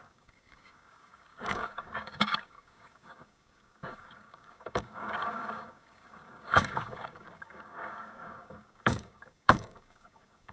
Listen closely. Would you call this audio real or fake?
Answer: fake